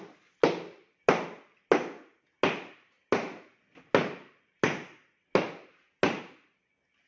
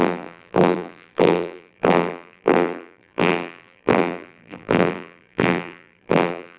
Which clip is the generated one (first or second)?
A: second